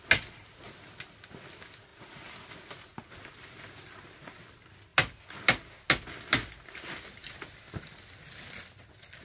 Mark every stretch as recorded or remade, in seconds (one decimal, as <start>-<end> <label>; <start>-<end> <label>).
0.0-9.2 recorded